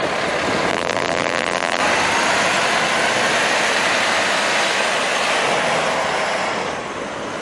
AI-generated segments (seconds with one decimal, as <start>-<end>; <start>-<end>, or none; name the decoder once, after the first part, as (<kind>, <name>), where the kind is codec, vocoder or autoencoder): 0.7-1.8 (vocoder, BigVGAN v2)